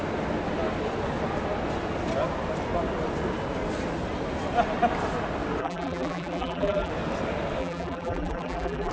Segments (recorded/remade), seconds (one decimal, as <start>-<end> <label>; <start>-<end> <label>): 0.0-5.6 recorded; 5.6-6.9 remade; 6.9-7.6 recorded; 7.6-8.9 remade

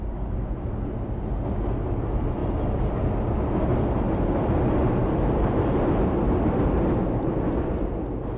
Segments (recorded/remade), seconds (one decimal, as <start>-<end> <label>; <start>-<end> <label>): 0.0-8.4 recorded

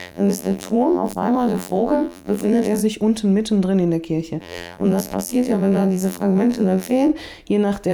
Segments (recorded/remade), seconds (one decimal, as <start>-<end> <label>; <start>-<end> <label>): 0.0-2.8 remade; 2.8-4.4 recorded; 4.4-7.1 remade; 7.1-7.9 recorded